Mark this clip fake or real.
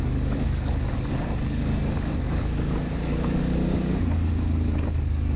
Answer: fake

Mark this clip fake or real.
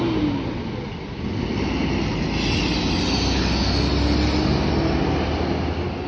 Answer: real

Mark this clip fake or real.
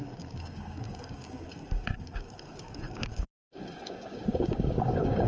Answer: fake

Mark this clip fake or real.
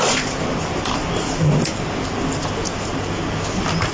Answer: real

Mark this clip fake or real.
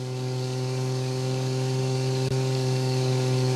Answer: fake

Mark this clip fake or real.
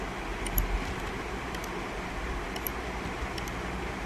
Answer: real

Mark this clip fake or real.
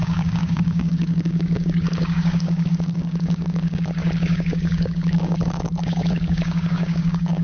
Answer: fake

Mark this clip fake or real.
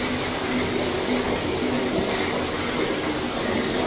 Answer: real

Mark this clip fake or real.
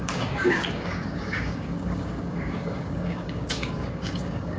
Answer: fake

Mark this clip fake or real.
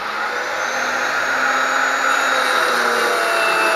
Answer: real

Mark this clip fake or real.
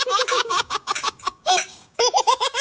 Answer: fake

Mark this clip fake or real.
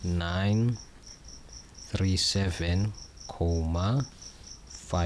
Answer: real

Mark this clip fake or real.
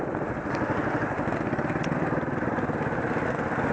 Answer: real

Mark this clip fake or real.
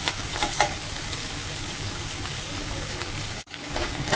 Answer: fake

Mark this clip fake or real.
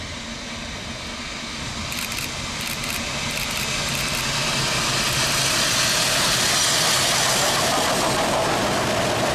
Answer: real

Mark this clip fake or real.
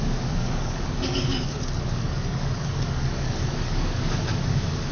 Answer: fake